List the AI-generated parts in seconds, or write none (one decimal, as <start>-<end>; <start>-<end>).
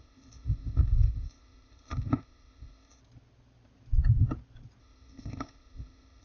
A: 0.0-3.0; 4.8-6.2